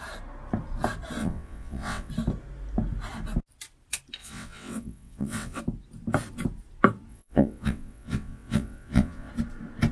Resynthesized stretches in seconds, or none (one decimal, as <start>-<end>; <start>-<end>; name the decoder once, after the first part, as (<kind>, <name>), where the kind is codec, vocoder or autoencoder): 1.2-2.1 (vocoder, WaveNeXt); 4.2-5.6; 7.1-9.3